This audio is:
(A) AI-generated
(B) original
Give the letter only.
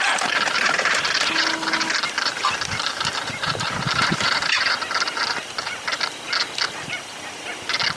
B